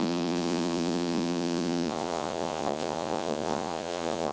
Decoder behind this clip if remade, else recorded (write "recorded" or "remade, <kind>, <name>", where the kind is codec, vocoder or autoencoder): remade, vocoder, Vocos